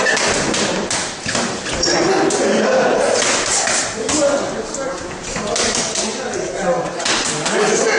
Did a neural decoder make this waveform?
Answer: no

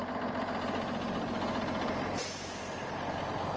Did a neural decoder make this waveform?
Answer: no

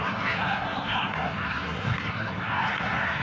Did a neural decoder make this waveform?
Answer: yes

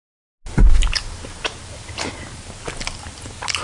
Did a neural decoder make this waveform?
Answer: no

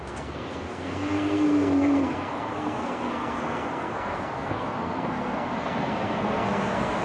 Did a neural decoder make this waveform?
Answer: yes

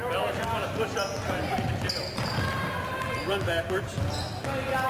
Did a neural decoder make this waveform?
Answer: no